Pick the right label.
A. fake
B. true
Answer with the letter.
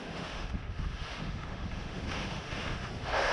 A